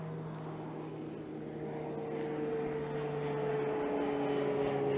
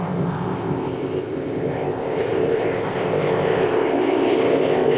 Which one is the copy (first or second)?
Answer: second